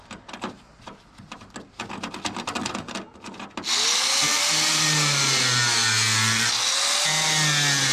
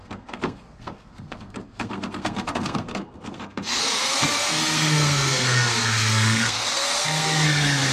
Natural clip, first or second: first